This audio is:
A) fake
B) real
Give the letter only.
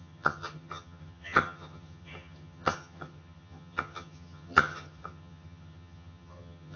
A